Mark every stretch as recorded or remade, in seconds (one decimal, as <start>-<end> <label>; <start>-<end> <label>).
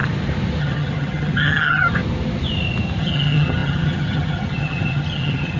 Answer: 0.0-0.6 recorded; 0.6-2.0 remade; 2.0-3.0 recorded; 3.0-5.6 remade